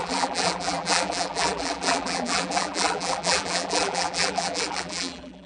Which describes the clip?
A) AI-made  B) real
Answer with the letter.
A